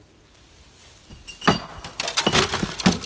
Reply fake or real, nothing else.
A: real